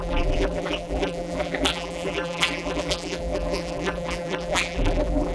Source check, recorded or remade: remade